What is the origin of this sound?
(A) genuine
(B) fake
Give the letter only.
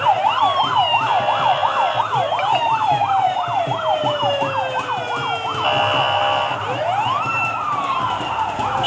A